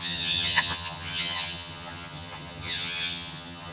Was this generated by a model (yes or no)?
yes